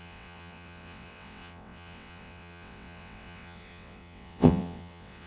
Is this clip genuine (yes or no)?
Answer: no